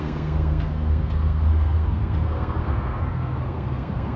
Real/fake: fake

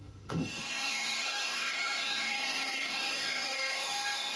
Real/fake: fake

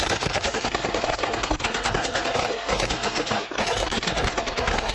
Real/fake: fake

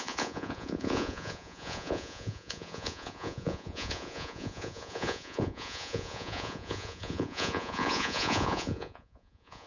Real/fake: fake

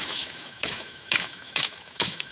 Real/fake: fake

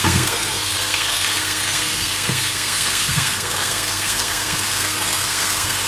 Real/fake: fake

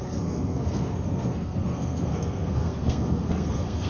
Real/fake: fake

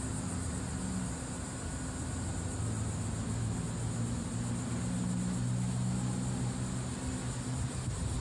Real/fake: real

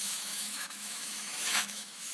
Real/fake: fake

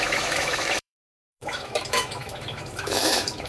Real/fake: fake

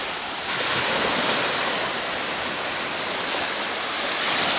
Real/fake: real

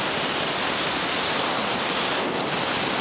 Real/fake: real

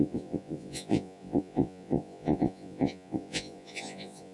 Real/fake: fake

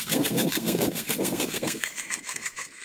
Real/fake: fake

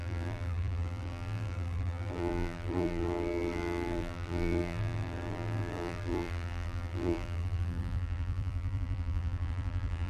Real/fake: fake